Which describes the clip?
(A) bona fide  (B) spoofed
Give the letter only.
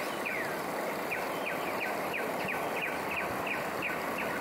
A